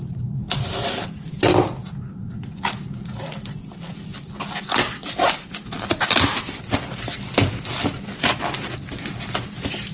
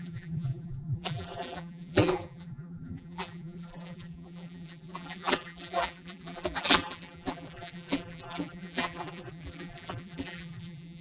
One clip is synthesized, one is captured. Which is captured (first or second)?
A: first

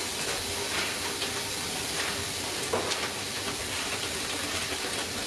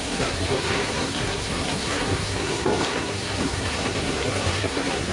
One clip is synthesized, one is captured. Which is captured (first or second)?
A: first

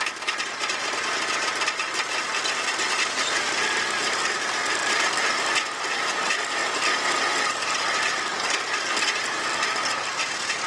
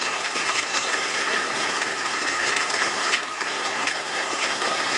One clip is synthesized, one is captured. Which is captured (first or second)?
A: first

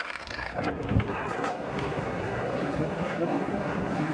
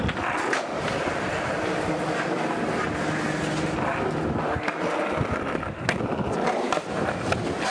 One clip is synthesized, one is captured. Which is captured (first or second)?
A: second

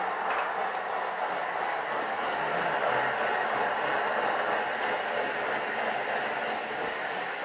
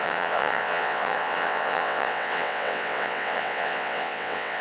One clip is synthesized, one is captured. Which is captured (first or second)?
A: first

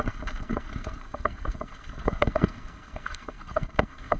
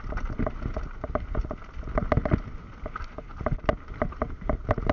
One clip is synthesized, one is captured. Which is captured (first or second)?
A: second